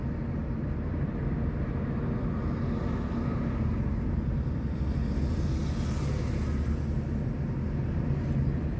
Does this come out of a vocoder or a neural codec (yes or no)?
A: no